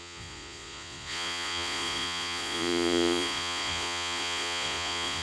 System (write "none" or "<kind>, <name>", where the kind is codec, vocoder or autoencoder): vocoder, Vocos